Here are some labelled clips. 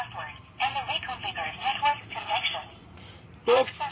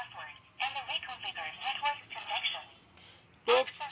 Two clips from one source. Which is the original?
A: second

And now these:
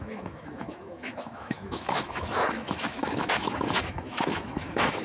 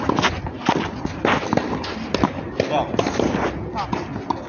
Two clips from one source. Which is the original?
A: second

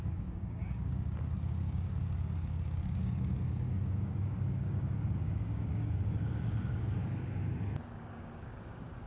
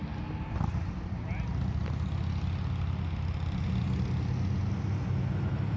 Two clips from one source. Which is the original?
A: second